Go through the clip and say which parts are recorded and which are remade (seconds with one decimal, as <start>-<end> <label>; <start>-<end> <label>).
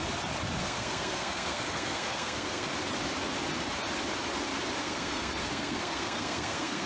0.0-0.6 recorded; 0.6-2.7 remade; 2.7-4.8 recorded; 4.8-6.9 remade